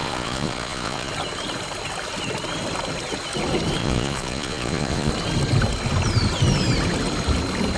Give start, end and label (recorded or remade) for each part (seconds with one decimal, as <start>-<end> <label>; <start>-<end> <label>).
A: 0.0-1.1 remade; 1.1-3.8 recorded; 3.8-5.1 remade; 5.1-7.8 recorded